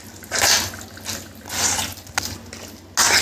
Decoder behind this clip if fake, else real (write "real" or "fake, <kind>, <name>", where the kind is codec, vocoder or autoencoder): real